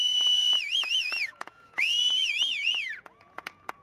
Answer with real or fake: fake